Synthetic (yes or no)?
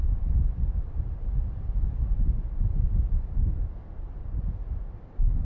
no